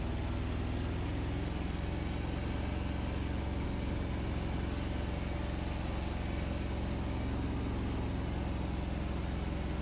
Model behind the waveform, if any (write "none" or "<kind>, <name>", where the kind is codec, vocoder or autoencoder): none